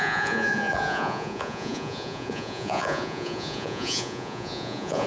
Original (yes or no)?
no